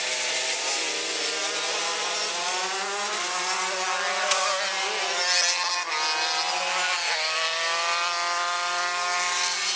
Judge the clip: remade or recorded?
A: recorded